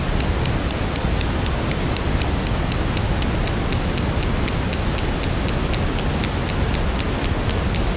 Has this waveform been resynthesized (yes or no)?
no